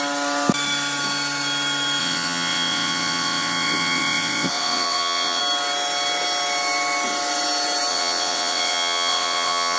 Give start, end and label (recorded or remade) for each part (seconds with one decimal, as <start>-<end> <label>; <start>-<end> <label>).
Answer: 0.0-2.0 recorded; 2.0-5.4 remade; 5.4-7.9 recorded; 7.9-9.8 remade